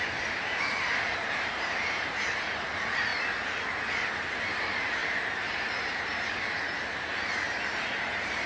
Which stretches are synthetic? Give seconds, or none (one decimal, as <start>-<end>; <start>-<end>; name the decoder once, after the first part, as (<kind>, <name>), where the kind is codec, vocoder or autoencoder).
0.0-3.1 (vocoder, BigVGAN v2); 3.8-8.5